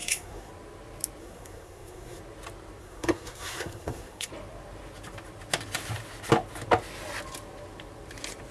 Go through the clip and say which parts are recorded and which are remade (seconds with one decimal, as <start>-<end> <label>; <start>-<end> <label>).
0.0-0.5 remade; 0.5-1.2 recorded; 1.2-2.2 remade; 2.2-2.8 recorded; 2.8-4.3 remade; 4.3-8.5 recorded